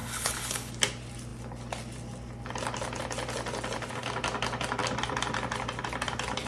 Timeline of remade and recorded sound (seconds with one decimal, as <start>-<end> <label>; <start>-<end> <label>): 0.0-0.7 remade; 0.7-6.5 recorded